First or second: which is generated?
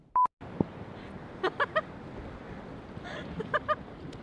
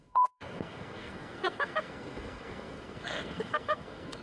second